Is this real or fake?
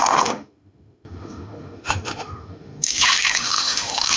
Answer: fake